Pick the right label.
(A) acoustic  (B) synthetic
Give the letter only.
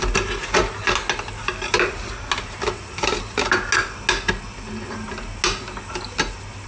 A